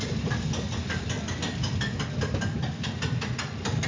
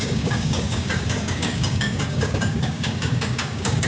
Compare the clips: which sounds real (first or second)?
first